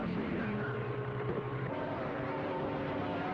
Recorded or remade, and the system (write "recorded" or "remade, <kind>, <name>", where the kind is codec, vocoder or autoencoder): recorded